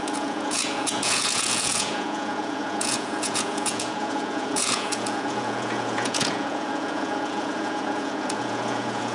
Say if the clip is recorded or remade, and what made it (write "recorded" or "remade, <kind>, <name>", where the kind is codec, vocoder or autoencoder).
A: remade, vocoder, Vocos